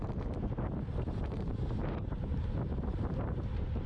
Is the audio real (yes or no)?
no